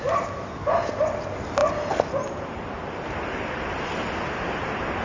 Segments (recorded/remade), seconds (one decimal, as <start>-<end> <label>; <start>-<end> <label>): 0.0-5.0 recorded